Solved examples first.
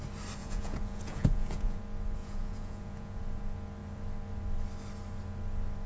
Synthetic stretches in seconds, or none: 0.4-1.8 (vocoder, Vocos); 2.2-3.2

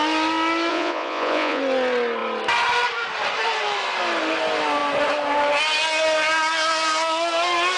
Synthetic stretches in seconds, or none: 0.7-1.6 (vocoder, Vocos)

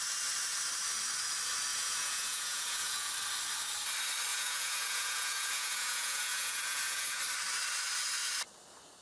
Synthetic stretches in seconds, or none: 1.7-3.1 (vocoder, Vocos); 4.3-7.2

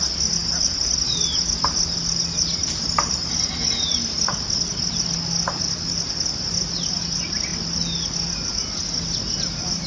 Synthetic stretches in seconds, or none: none